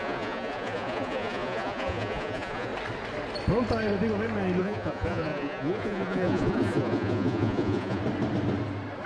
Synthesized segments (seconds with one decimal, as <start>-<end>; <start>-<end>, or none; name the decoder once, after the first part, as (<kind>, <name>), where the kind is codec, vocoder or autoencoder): 0.0-2.7 (vocoder, Vocos); 4.6-8.0